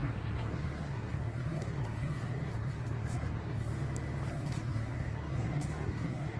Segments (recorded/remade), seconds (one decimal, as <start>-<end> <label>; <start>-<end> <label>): 0.0-3.7 remade; 3.7-4.3 recorded; 4.3-6.4 remade